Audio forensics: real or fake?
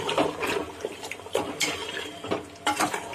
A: real